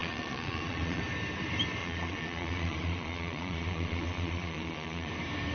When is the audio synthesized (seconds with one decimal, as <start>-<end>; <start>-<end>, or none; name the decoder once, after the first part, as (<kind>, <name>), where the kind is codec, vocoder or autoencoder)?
0.0-1.0 (vocoder, Vocos); 1.8-5.1

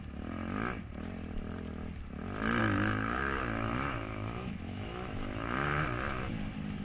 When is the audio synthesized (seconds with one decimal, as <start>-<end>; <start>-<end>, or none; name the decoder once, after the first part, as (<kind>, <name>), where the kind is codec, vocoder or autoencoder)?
2.6-6.3 (autoencoder, DAC-VAE)

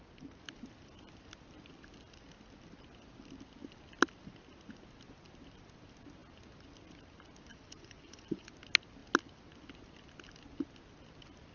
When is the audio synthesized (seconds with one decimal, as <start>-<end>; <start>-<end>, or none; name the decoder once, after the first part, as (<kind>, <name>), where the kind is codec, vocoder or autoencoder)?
7.5-8.5 (vocoder, Vocos)

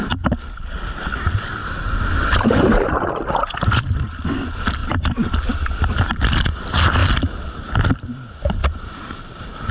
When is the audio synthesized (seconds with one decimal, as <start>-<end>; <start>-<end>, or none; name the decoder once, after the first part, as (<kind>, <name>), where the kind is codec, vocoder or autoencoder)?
1.6-3.0 (vocoder, BigVGAN v2); 4.8-5.7; 7.0-7.9; 8.6-9.7